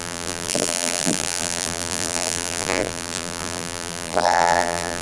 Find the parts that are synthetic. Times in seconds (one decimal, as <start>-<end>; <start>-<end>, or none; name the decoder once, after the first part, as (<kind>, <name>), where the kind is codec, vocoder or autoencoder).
0.0-5.0 (vocoder, BigVGAN v2)